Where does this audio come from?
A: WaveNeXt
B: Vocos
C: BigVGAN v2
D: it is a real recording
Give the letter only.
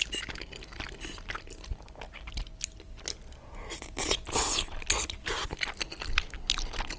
D